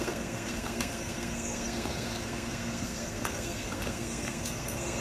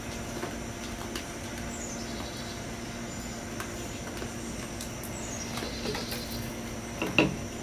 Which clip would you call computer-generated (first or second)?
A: first